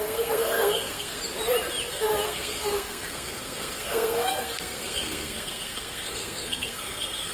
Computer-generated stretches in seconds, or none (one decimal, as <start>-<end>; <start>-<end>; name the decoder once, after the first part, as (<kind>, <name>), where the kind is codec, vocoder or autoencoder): 0.0-1.2 (codec, SNAC); 1.9-7.3